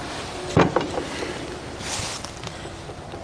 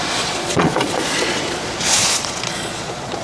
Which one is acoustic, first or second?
first